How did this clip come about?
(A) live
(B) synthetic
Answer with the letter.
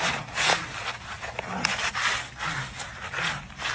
A